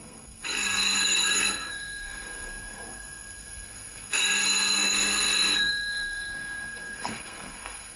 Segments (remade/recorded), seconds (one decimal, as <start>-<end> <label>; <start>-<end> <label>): 0.0-8.0 remade